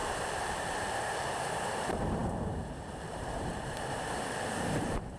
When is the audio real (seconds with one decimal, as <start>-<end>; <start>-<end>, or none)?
none